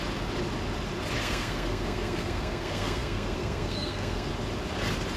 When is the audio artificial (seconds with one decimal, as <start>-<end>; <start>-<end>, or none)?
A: 1.2-4.3